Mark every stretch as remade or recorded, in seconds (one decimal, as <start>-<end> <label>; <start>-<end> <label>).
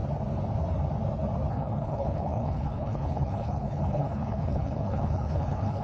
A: 0.0-1.5 recorded; 1.5-5.8 remade